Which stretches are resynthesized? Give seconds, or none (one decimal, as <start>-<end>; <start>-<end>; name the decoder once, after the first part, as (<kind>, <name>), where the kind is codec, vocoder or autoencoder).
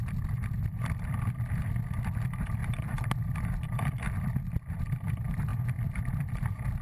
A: none